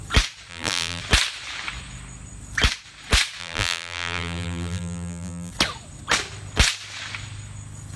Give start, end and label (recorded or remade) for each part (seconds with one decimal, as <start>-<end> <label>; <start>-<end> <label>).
0.0-0.5 recorded; 0.5-1.0 remade; 1.0-3.4 recorded; 3.4-5.5 remade; 5.5-8.0 recorded